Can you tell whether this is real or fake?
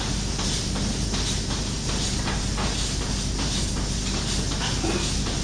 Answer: real